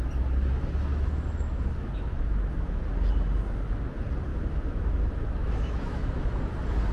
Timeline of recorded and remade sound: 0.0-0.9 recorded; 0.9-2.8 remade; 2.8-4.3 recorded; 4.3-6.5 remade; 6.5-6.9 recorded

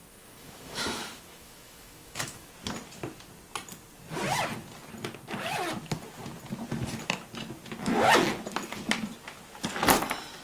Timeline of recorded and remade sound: 0.0-2.5 remade; 2.5-10.4 recorded

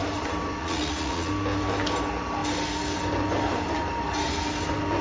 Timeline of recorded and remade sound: 0.0-0.6 recorded; 0.6-1.3 remade; 1.3-5.0 recorded

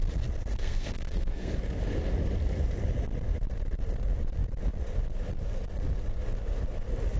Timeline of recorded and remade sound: 0.0-0.5 recorded; 0.5-1.5 remade; 1.5-7.2 recorded